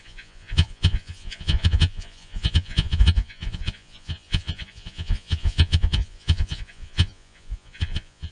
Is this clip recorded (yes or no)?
no